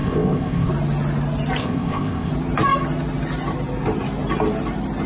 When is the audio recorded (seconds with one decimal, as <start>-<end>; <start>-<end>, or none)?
0.7-1.6; 2.3-5.1